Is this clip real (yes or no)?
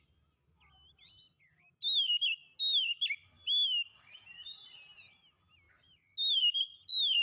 yes